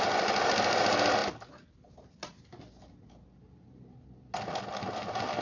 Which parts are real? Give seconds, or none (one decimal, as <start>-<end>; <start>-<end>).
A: 0.0-5.4